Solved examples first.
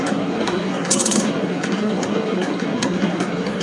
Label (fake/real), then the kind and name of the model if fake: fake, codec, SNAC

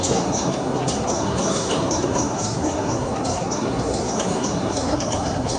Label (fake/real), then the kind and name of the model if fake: fake, codec, SNAC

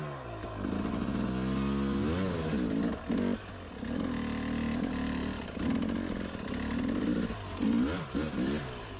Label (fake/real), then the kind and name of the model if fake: real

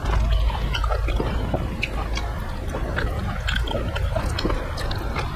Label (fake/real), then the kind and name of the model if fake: real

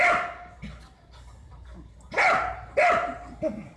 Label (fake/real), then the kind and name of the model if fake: real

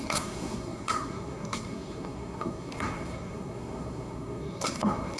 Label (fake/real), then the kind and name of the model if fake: fake, codec, SNAC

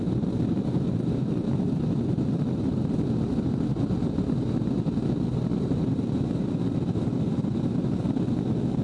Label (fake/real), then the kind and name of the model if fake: real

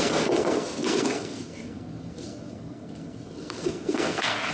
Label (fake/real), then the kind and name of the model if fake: fake, codec, SNAC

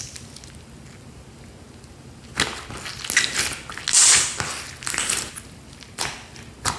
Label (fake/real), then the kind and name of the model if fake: real